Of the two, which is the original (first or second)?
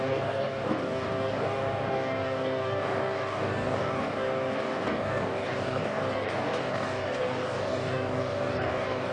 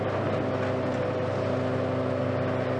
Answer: second